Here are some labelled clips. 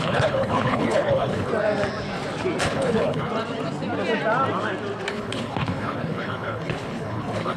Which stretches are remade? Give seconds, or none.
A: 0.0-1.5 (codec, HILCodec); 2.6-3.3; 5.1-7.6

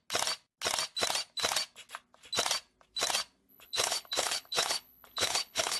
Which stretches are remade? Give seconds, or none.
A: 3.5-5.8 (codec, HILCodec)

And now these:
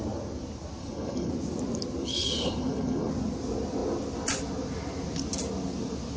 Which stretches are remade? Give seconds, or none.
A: 0.8-1.3 (codec, HILCodec); 2.0-3.1

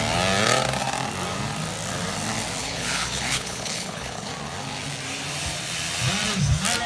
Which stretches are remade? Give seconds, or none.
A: 2.6-4.3 (codec, HILCodec)